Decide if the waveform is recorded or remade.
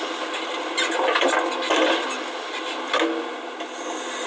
recorded